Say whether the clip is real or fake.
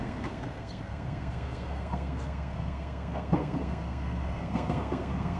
fake